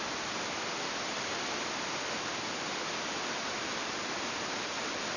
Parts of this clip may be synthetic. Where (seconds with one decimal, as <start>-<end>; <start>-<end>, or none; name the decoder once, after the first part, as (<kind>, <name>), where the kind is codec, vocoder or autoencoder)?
none